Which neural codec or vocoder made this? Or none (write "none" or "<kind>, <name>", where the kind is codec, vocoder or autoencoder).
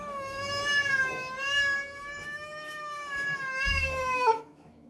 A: autoencoder, DAC-VAE